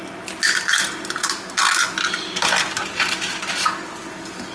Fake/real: real